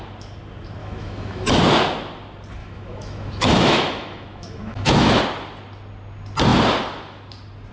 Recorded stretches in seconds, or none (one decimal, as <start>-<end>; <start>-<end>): 0.0-0.8; 1.6-2.6; 5.2-7.7